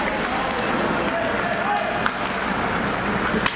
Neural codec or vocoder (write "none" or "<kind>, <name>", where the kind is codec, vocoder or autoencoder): none